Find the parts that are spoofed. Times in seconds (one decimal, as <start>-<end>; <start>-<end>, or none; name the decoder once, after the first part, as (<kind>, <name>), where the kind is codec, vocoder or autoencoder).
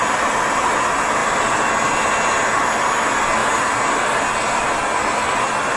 none